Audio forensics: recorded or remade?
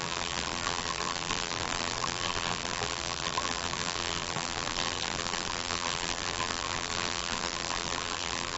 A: remade